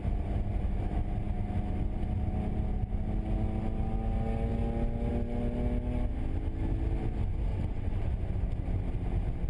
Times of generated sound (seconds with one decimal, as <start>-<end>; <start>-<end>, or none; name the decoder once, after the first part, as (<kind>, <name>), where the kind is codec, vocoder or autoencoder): 7.5-8.1 (vocoder, WaveNeXt)